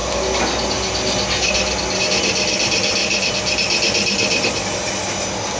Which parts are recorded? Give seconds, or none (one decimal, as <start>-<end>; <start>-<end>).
0.0-5.6